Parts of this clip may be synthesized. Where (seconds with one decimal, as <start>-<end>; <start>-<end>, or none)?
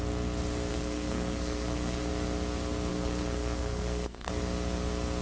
0.7-2.1; 2.9-4.3